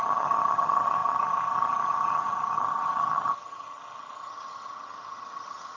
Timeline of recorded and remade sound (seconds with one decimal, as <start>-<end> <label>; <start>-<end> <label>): 0.0-5.8 remade

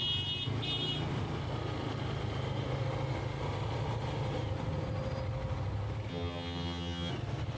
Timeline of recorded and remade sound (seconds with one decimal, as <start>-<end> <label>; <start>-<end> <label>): 0.0-6.1 recorded; 6.1-7.1 remade; 7.1-7.6 recorded

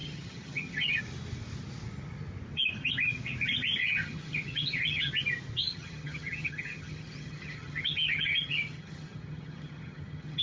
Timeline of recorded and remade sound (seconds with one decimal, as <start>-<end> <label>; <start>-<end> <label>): 0.0-1.0 remade; 1.0-3.8 recorded; 3.8-5.1 remade; 5.1-5.6 recorded; 5.6-10.4 remade

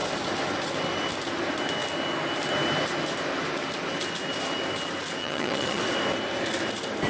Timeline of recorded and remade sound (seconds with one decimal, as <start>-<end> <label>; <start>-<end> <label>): 0.0-5.2 recorded; 5.2-5.8 remade; 5.8-7.1 recorded

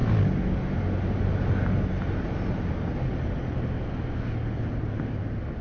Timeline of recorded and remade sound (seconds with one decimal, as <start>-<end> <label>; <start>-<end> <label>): 0.0-5.6 recorded

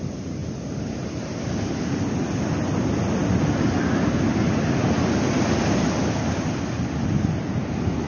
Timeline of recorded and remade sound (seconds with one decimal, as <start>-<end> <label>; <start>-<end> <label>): 0.0-8.1 recorded